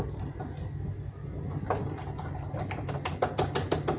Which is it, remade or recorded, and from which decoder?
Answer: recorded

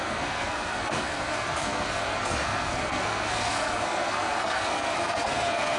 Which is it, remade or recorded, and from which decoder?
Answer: remade, codec, SNAC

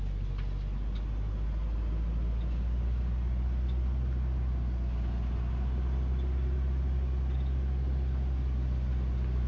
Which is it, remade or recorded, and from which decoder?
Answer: recorded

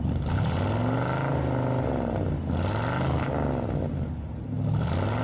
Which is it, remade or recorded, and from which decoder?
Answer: recorded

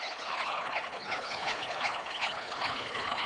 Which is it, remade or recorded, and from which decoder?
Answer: remade, codec, HILCodec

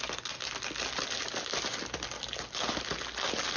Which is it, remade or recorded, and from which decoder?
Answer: recorded